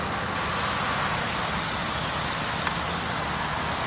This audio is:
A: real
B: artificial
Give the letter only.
A